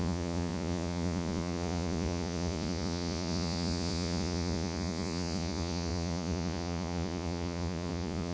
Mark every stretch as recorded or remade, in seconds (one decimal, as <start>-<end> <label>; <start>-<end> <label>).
0.0-8.3 remade

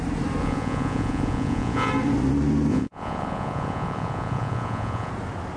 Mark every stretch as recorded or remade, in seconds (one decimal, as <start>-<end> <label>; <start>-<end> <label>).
0.0-0.4 recorded; 0.4-1.9 remade; 1.9-2.7 recorded; 2.7-5.1 remade; 5.1-5.6 recorded

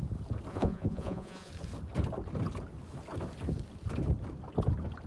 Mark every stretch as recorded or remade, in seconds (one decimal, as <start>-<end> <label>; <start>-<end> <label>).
0.0-0.5 recorded; 0.5-1.5 remade; 1.5-5.1 recorded

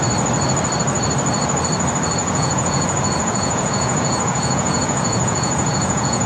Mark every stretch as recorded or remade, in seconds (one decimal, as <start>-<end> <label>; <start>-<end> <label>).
0.0-2.2 recorded; 2.2-6.3 remade

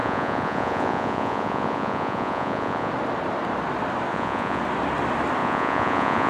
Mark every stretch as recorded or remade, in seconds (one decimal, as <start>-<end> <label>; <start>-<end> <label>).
0.0-2.9 remade; 2.9-4.1 recorded; 4.1-4.6 remade; 4.6-5.4 recorded; 5.4-6.3 remade

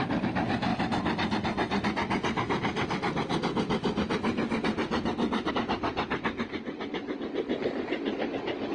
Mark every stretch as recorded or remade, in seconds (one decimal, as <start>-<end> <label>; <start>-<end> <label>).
0.0-8.7 recorded

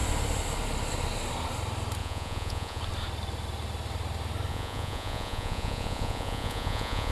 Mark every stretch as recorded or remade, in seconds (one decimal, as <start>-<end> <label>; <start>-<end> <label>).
0.0-2.0 recorded; 2.0-2.8 remade; 2.8-4.5 recorded; 4.5-7.1 remade

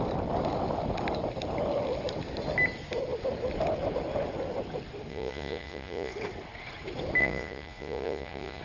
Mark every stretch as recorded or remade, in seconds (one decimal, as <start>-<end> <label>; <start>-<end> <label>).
0.0-5.1 recorded; 5.1-6.1 remade; 6.1-7.2 recorded; 7.2-8.6 remade